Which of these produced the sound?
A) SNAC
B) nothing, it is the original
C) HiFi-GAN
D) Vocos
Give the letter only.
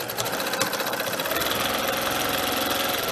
B